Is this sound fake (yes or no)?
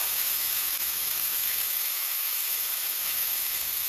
yes